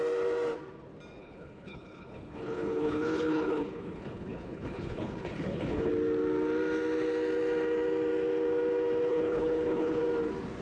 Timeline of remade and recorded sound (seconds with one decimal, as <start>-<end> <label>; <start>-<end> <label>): 0.0-1.2 recorded; 1.2-5.9 remade; 5.9-9.1 recorded; 9.1-10.0 remade; 10.0-10.6 recorded